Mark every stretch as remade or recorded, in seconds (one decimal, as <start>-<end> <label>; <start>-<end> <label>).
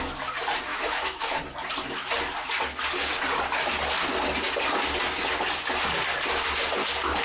0.0-0.7 recorded; 0.7-1.4 remade; 1.4-7.2 recorded